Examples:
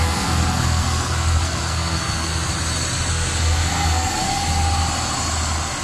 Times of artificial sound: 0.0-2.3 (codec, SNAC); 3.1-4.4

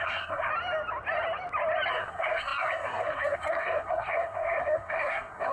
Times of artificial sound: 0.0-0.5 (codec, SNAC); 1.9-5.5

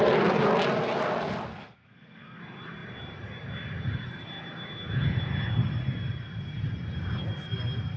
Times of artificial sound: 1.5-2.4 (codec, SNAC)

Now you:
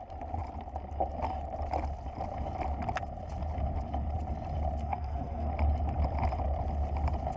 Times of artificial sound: 4.8-5.5 (codec, SNAC)